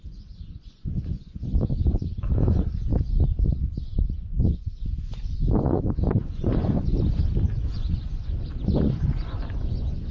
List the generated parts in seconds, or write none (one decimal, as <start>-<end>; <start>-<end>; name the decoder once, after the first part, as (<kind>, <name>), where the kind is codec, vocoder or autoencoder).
0.0-6.9 (vocoder, Vocos); 7.7-10.1